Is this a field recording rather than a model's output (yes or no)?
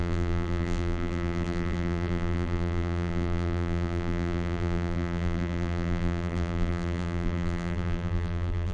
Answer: no